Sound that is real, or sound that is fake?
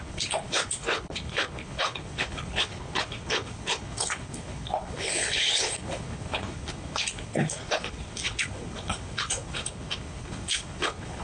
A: fake